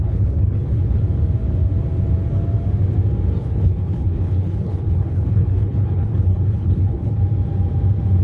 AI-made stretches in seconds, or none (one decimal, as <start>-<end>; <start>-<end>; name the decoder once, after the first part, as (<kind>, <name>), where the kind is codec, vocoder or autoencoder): 0.0-1.0 (codec, HILCodec); 3.4-7.2